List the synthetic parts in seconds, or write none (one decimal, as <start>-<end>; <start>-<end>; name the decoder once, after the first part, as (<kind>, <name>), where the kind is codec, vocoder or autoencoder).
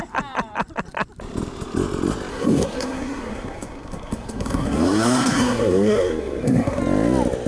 2.3-6.8 (codec, SNAC)